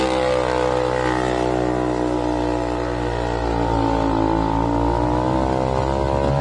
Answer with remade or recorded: recorded